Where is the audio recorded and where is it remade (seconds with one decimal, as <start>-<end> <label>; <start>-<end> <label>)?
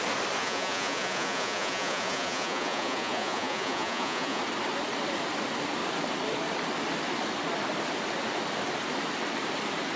0.0-0.4 recorded; 0.4-4.4 remade; 4.4-10.0 recorded